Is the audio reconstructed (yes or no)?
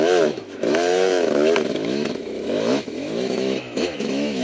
yes